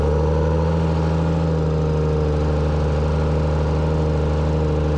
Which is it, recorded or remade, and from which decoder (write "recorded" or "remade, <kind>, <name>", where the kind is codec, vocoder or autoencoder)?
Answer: recorded